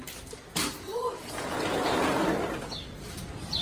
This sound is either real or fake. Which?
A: real